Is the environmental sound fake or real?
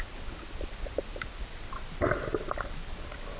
real